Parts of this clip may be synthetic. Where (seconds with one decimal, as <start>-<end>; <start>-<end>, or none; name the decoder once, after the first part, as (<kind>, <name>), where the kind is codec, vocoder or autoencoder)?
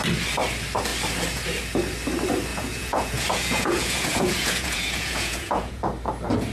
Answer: 2.5-5.8 (vocoder, Vocos)